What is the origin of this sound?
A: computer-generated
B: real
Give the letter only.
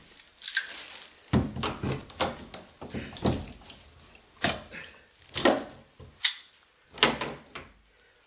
B